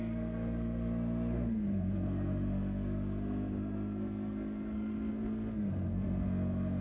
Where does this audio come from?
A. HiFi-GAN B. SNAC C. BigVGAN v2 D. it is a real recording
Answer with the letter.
B